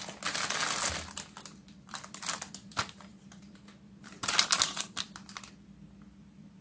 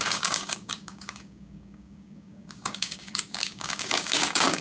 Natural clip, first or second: first